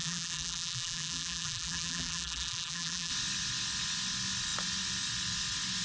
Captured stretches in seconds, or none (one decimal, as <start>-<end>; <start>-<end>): 3.1-5.8